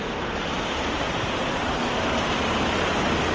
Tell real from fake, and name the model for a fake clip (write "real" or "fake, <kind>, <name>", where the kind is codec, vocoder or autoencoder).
fake, vocoder, BigVGAN v2